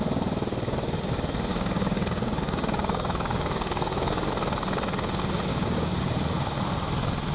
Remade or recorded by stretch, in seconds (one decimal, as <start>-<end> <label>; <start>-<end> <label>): 0.0-1.5 recorded; 1.5-4.3 remade; 4.3-5.5 recorded; 5.5-6.0 remade; 6.0-7.3 recorded